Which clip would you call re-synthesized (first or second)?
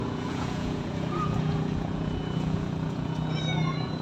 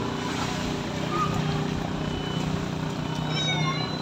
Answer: first